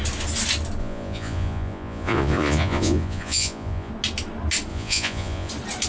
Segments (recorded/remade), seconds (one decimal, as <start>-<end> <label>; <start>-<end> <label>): 0.0-0.8 recorded; 0.8-3.9 remade; 3.9-4.7 recorded; 4.7-5.5 remade; 5.5-5.9 recorded